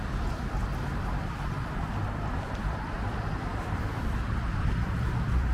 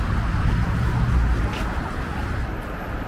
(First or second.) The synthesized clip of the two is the first